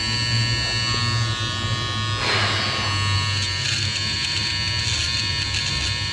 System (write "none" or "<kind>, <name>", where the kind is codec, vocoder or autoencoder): none